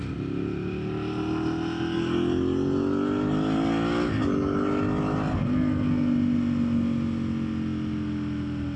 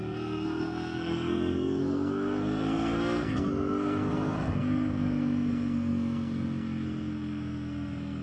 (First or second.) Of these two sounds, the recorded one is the first